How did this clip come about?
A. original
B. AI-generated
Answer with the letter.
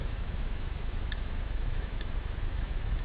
B